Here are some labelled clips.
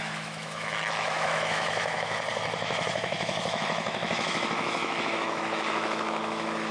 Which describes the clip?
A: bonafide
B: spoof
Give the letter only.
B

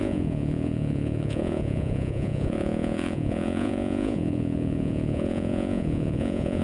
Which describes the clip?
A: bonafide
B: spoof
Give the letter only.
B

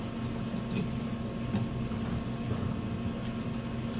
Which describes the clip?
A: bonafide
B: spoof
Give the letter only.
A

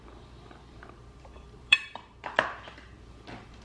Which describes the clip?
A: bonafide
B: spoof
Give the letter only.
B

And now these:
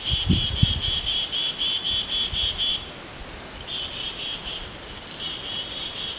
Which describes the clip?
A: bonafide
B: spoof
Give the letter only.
A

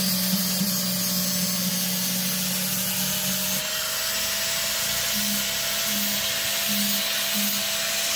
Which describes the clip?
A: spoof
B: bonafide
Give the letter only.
B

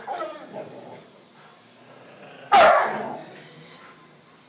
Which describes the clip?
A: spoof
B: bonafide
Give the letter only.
B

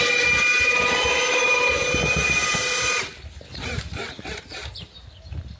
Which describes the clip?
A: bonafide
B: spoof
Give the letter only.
B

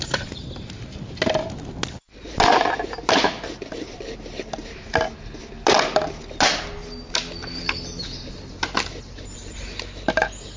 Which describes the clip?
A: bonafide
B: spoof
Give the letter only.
A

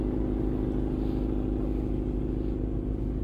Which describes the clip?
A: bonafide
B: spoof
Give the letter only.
A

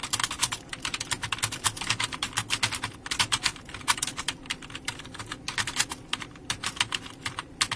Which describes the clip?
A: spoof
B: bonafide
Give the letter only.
A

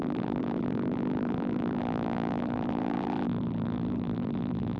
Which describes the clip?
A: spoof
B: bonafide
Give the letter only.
A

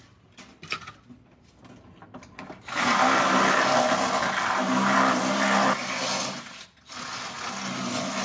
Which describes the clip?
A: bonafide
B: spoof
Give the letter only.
A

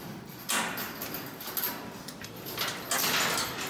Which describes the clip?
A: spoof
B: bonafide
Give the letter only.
B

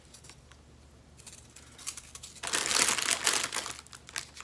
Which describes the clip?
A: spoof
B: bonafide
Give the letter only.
B